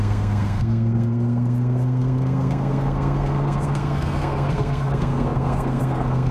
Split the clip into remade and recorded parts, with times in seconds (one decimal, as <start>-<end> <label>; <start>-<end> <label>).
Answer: 0.0-6.3 remade